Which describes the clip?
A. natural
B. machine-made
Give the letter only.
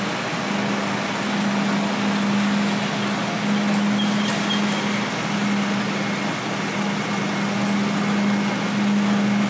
A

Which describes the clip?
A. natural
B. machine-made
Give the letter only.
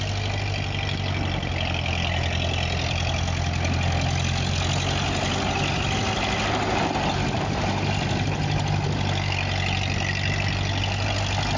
A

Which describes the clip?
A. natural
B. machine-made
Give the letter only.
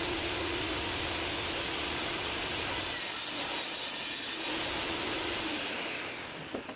A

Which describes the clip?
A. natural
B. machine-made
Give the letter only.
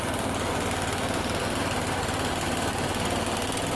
A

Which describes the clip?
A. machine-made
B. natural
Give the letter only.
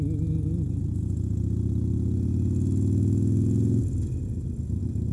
B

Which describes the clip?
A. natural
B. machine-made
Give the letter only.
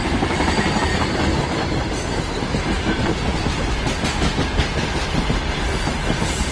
A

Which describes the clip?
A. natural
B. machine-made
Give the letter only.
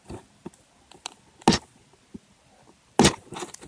A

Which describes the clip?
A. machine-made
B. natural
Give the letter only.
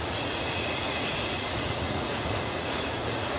A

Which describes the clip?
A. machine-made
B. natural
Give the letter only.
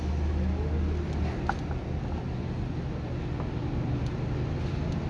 B